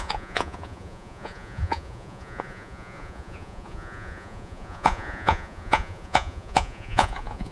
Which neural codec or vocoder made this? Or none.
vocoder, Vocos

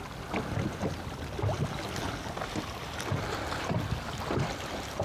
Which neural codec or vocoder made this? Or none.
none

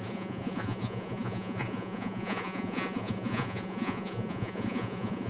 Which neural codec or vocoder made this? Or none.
vocoder, Vocos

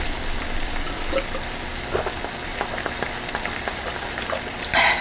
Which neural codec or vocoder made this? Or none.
none